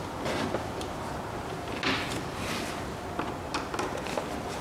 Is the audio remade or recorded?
recorded